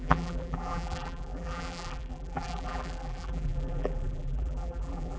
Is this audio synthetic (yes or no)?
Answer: yes